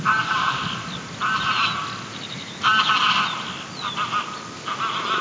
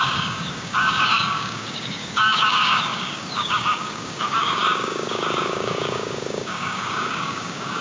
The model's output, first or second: second